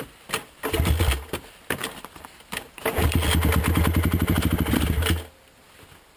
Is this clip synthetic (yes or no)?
no